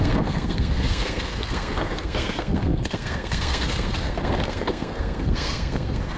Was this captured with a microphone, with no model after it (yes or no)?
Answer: no